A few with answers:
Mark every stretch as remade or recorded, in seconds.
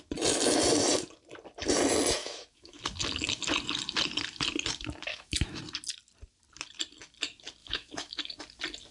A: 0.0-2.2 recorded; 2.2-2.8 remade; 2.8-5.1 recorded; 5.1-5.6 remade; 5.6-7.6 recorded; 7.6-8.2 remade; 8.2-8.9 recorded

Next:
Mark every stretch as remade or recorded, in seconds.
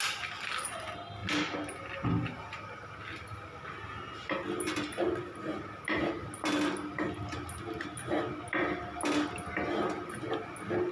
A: 0.0-10.9 recorded